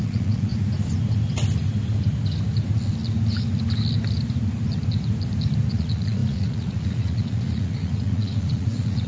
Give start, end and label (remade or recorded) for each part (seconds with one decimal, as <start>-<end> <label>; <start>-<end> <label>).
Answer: 0.0-0.5 remade; 0.5-5.7 recorded; 5.7-9.1 remade